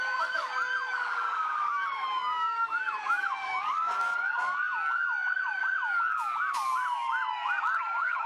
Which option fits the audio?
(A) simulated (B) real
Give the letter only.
A